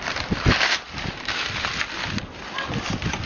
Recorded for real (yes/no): yes